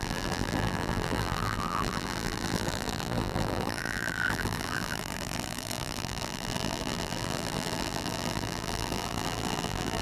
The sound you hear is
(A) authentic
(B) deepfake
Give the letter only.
B